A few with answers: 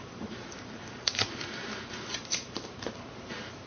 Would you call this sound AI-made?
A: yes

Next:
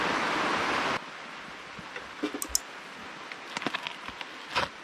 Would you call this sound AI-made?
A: no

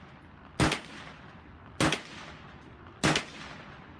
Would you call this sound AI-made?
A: no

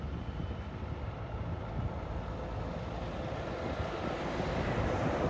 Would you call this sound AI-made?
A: yes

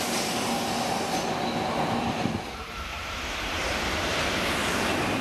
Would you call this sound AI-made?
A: no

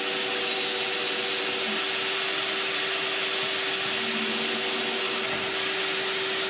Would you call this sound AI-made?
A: no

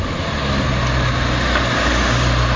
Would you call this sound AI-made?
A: no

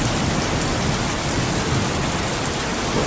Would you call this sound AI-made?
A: no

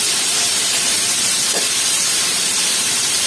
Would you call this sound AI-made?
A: yes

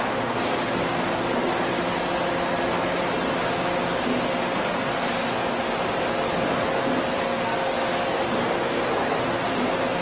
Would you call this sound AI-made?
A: no